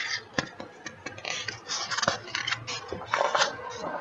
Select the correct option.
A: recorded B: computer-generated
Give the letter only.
A